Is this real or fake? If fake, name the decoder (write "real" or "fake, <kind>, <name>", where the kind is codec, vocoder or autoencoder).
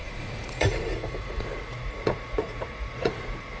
fake, vocoder, Vocos